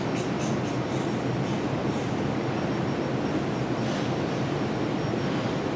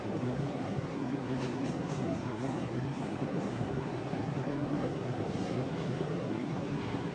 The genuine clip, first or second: first